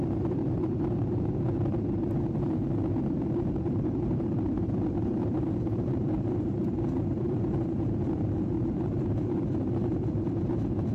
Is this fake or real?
fake